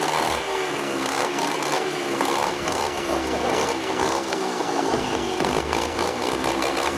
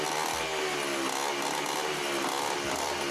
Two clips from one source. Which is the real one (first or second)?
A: second